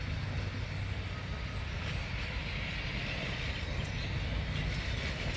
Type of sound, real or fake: real